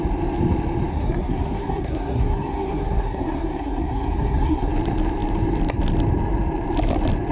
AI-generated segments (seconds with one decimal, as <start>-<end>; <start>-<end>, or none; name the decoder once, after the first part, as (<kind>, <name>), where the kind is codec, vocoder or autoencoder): 0.9-4.7 (codec, SNAC)